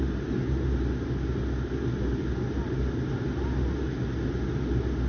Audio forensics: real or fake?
real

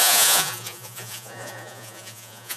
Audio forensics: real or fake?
fake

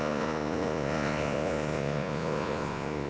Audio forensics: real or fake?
fake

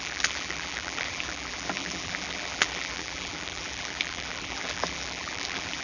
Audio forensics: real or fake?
fake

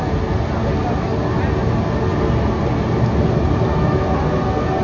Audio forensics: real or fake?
real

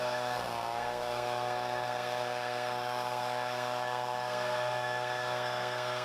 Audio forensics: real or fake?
fake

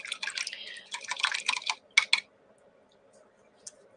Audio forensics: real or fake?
real